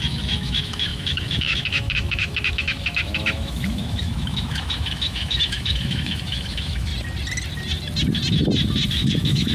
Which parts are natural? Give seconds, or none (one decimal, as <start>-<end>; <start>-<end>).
6.9-8.9